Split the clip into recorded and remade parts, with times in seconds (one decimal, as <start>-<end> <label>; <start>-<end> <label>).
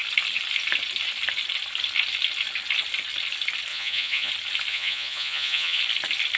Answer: 0.0-3.7 recorded; 3.7-4.3 remade; 4.3-4.7 recorded; 4.7-5.8 remade; 5.8-6.4 recorded